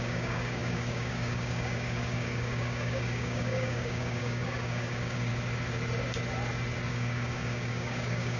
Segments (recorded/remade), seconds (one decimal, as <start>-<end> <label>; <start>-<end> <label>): 0.0-5.3 remade; 5.3-6.9 recorded; 6.9-8.4 remade

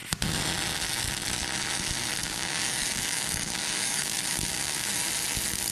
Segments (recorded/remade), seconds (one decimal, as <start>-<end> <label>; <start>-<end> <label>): 0.0-2.2 recorded; 2.2-4.9 remade; 4.9-5.7 recorded